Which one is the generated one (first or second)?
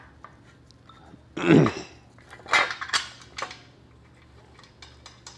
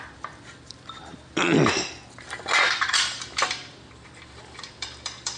second